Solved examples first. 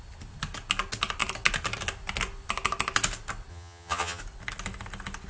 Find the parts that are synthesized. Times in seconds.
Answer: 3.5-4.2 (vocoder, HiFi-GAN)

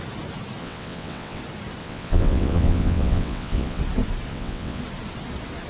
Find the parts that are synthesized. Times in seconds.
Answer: 0.6-1.4 (vocoder, WaveNeXt); 1.8-3.8; 4.3-4.8